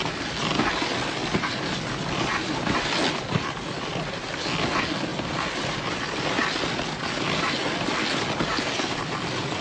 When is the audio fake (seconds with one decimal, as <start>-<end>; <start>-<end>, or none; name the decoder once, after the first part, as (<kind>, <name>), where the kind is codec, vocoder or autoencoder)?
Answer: none